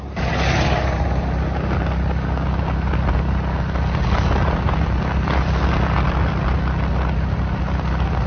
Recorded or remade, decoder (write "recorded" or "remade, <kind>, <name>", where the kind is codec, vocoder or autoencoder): recorded